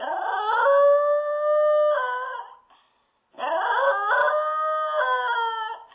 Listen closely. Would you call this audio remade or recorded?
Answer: recorded